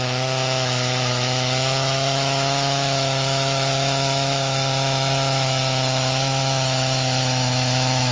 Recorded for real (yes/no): no